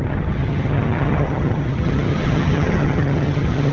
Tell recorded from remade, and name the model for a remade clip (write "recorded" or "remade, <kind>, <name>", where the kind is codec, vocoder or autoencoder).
remade, vocoder, HiFi-GAN